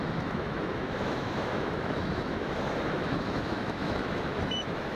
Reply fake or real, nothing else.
fake